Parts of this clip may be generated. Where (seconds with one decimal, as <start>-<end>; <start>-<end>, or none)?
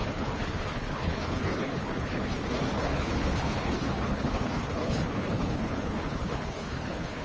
0.0-7.2